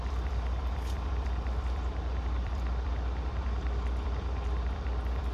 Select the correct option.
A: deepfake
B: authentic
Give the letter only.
A